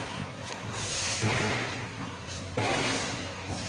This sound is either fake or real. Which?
fake